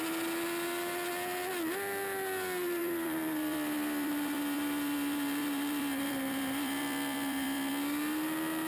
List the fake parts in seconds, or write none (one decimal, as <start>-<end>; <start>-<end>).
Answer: 2.8-7.7